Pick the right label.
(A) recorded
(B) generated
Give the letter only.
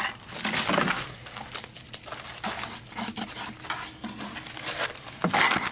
A